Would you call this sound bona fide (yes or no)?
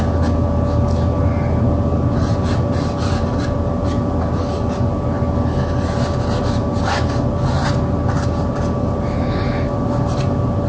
yes